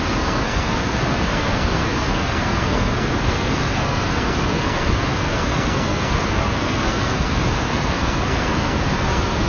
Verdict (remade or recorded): remade